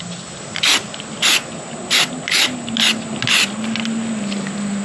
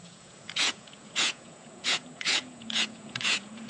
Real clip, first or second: first